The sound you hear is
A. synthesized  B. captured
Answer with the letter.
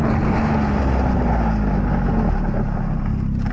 B